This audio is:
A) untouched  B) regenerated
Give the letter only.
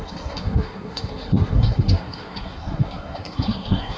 B